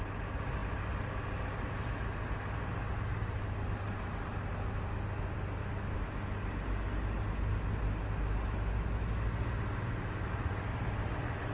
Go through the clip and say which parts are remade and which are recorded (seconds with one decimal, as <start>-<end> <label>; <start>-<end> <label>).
0.0-11.5 recorded

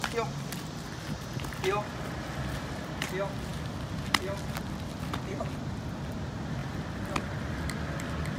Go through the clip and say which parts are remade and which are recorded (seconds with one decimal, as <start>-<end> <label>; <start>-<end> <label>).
0.0-8.4 recorded

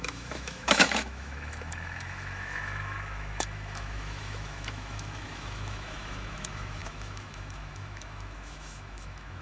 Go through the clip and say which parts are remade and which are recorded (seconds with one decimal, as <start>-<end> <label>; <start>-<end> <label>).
0.0-9.4 remade

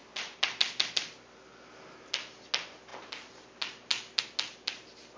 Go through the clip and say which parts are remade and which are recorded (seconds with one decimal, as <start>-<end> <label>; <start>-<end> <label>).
0.0-5.2 recorded

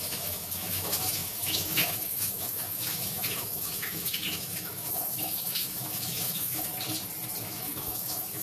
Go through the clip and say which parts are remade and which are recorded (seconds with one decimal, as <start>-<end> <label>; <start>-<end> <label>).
0.0-6.7 remade; 6.7-7.4 recorded; 7.4-8.4 remade

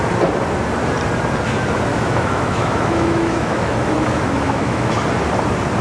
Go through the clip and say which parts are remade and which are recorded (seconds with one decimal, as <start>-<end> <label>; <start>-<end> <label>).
0.0-1.9 recorded; 1.9-4.9 remade; 4.9-5.8 recorded

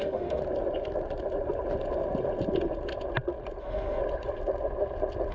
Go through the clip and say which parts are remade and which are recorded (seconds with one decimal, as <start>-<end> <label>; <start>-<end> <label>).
0.0-0.4 remade; 0.4-3.6 recorded; 3.6-4.0 remade; 4.0-5.3 recorded

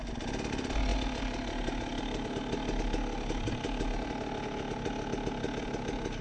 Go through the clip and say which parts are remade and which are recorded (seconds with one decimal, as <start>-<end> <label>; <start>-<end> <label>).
0.0-6.2 recorded